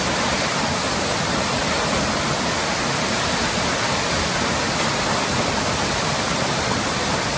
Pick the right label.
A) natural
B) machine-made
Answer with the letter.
A